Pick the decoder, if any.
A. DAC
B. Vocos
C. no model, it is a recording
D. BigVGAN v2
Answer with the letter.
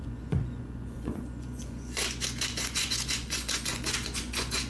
B